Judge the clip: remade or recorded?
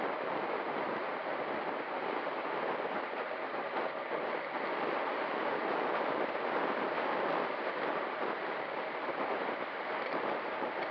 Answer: recorded